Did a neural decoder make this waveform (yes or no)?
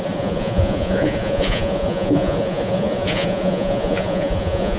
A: yes